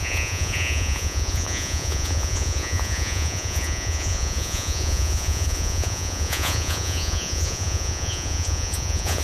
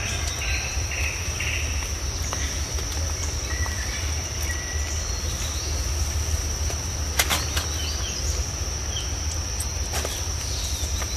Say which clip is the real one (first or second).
second